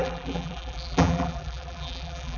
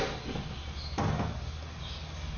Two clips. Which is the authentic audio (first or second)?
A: second